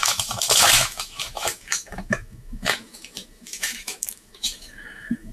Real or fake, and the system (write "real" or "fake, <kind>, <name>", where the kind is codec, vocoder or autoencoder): fake, autoencoder, DAC-VAE